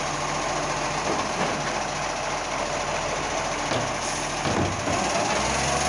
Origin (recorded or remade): recorded